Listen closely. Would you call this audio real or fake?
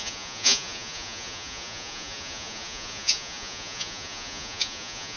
fake